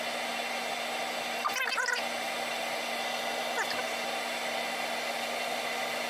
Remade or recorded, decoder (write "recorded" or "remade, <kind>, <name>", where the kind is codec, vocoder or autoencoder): recorded